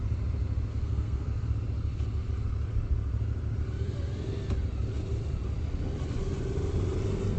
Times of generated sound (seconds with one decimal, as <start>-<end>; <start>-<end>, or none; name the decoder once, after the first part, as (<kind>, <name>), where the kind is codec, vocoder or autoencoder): 0.7-1.5 (codec, SNAC)